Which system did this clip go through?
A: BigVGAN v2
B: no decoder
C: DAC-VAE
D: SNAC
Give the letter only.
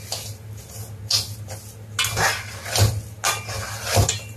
B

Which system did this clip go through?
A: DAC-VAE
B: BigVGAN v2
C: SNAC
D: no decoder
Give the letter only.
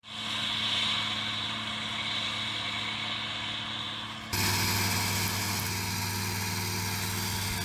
D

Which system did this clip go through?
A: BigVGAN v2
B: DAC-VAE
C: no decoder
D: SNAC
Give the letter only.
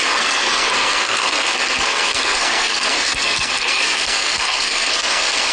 D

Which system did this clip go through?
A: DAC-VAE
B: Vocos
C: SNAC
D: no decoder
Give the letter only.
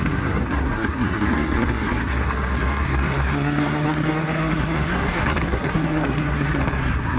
C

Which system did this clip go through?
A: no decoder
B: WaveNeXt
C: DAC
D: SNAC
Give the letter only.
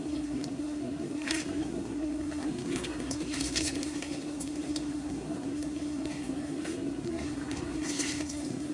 D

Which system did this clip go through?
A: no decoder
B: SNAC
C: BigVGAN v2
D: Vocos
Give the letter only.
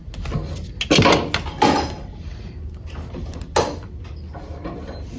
A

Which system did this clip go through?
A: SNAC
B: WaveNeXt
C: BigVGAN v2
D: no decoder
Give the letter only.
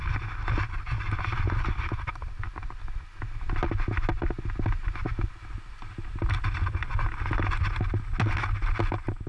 D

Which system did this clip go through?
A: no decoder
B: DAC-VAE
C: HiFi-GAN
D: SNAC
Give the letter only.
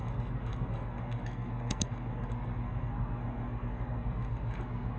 D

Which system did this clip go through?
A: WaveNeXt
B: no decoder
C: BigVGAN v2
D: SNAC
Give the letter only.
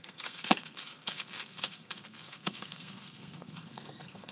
D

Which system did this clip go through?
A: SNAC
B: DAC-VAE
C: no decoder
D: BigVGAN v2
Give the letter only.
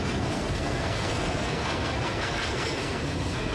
A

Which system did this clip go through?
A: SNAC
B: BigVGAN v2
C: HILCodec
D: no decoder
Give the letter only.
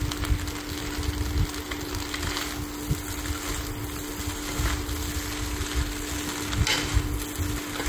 D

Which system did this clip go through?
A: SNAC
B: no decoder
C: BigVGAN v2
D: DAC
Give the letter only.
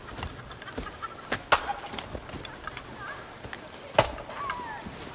B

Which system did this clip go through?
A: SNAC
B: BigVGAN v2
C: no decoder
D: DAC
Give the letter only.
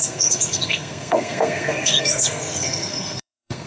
A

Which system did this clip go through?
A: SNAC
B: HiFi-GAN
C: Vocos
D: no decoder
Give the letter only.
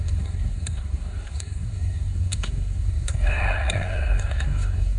A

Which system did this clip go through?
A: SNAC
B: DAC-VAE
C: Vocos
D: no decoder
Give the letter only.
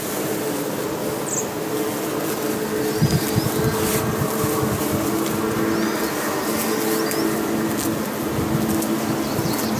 D